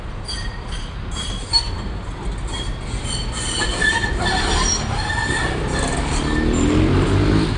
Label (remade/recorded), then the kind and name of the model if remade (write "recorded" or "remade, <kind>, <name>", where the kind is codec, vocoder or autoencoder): recorded